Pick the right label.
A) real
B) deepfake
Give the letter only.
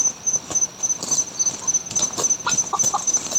A